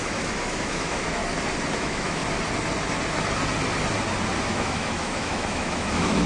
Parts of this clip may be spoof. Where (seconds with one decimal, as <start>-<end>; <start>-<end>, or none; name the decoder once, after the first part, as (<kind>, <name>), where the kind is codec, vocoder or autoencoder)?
0.0-1.2 (autoencoder, DAC-VAE); 1.8-2.2; 4.4-6.3